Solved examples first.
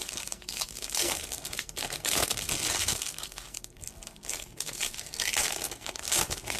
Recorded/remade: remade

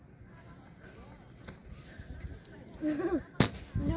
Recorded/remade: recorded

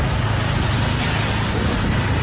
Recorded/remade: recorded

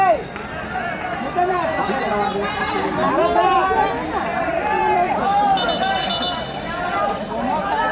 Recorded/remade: recorded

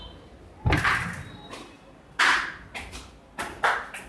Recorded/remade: recorded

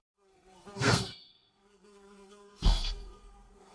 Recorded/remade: remade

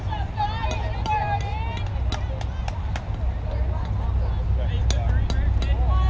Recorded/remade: recorded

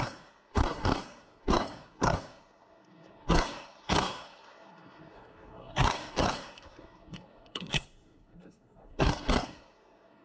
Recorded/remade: remade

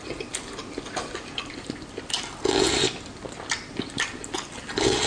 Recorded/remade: recorded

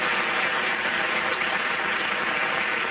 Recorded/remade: recorded